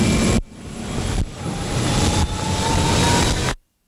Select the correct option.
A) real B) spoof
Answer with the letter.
A